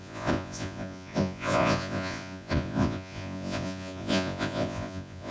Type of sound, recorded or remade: remade